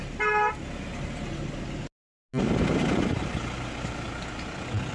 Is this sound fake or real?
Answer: real